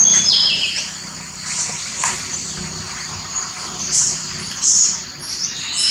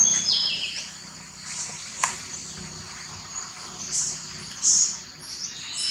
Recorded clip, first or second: second